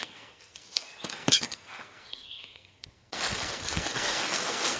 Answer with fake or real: fake